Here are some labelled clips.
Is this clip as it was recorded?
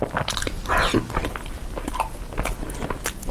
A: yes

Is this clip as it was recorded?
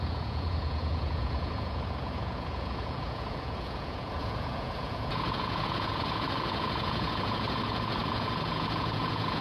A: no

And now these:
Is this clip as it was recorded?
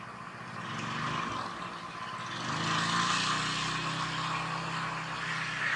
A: yes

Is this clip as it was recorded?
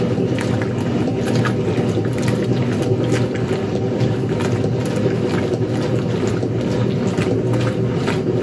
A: yes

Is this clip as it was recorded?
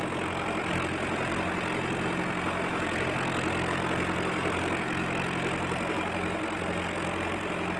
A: yes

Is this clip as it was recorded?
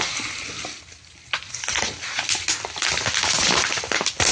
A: yes